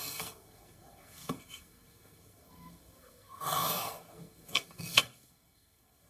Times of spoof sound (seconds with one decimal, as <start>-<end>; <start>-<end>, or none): 0.0-6.1